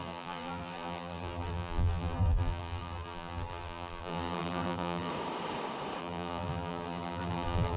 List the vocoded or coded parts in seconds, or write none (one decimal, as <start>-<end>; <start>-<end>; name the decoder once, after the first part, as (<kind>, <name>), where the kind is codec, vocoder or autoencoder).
0.0-5.1 (vocoder, BigVGAN v2); 6.0-7.8